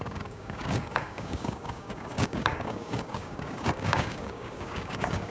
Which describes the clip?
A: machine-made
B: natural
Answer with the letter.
A